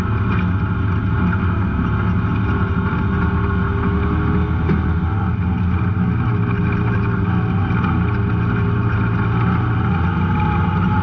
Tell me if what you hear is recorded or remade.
recorded